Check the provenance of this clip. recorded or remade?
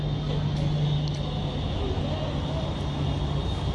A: recorded